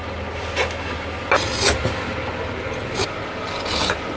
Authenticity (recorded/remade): recorded